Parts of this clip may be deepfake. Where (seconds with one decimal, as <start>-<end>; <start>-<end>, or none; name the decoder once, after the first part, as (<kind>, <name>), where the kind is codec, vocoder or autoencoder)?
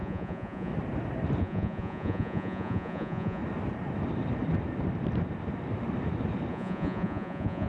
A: 0.0-0.7 (vocoder, Vocos); 1.4-3.4; 6.5-7.7